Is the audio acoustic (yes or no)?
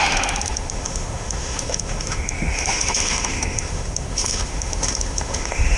no